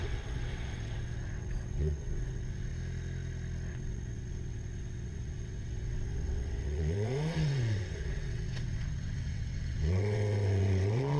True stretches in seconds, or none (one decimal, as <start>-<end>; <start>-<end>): 2.7-3.7